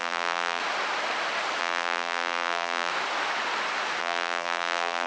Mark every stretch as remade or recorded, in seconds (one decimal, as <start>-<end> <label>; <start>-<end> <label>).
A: 0.0-0.6 remade; 0.6-1.6 recorded; 1.6-2.9 remade; 2.9-4.0 recorded; 4.0-5.1 remade